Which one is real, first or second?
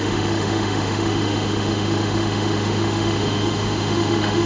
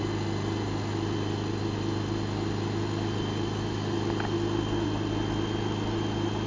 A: second